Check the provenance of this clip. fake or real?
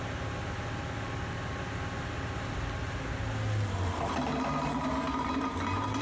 real